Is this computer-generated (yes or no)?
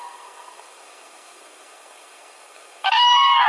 yes